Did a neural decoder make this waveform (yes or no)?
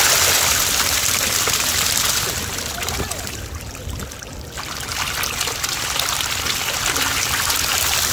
no